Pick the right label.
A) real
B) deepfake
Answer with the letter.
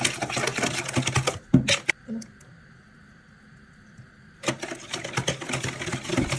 A